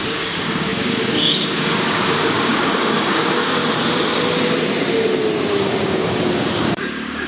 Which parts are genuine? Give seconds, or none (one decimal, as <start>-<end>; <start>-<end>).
3.6-5.5

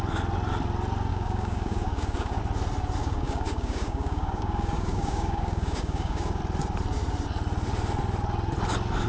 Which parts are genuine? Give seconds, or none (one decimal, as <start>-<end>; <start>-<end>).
0.0-1.1; 2.4-3.0; 6.4-9.1